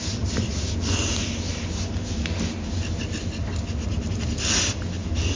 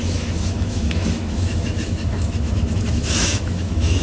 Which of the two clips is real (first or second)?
first